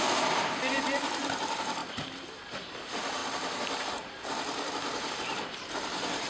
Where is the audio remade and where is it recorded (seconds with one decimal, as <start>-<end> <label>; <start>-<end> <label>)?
0.0-1.8 remade; 1.8-2.5 recorded; 2.5-3.2 remade; 3.2-3.9 recorded; 3.9-6.3 remade